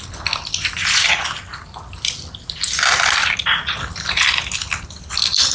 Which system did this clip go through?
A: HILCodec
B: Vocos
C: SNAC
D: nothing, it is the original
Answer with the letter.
D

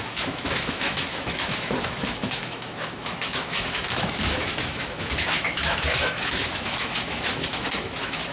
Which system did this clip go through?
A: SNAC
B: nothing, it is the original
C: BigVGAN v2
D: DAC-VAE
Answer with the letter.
D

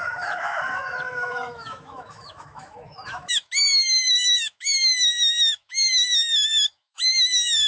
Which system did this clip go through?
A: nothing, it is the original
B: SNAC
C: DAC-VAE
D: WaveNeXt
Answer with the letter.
C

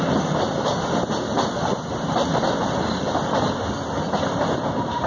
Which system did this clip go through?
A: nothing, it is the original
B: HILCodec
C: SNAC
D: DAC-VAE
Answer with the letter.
A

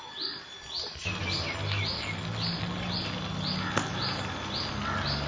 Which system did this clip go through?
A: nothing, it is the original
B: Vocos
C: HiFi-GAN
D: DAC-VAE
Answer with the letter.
A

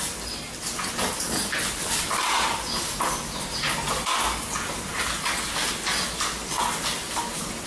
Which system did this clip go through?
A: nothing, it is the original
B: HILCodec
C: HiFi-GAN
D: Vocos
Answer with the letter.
A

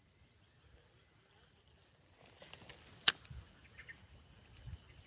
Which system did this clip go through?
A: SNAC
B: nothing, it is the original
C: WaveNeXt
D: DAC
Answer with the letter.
B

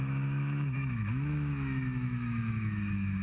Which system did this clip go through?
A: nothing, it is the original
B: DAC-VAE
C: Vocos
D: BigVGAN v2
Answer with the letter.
B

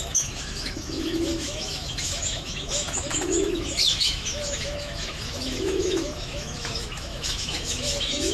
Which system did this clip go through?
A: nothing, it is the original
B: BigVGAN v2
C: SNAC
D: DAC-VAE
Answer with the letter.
D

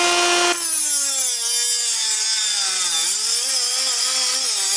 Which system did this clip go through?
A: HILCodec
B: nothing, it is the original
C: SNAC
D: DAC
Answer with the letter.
B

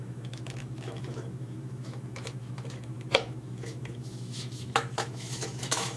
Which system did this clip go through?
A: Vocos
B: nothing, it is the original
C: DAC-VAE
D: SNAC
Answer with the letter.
C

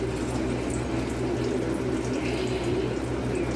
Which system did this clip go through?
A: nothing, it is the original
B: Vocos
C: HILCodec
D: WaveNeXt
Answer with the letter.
A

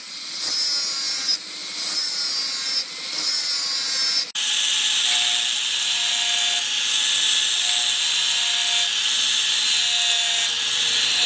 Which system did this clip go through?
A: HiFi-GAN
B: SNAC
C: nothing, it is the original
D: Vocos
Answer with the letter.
C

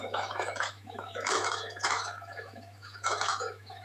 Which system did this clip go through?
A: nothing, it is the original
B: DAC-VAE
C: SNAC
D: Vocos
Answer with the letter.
B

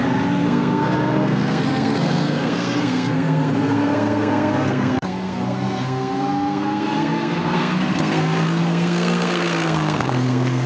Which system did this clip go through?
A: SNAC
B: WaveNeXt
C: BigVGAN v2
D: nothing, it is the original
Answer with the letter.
A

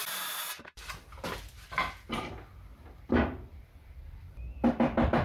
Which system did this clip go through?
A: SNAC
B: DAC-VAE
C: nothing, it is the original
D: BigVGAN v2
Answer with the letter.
D